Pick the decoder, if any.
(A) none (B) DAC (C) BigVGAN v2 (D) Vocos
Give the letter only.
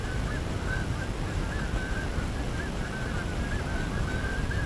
A